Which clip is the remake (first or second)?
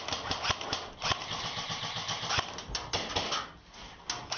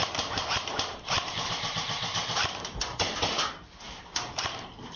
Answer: second